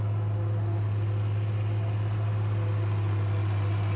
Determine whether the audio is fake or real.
real